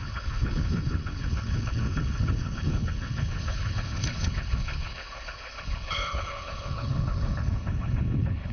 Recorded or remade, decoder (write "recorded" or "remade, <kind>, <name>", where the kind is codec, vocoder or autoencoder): remade, codec, HILCodec